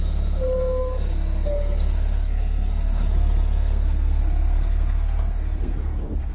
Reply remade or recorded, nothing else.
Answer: remade